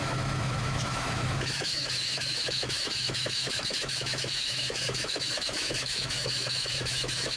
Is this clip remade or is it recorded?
remade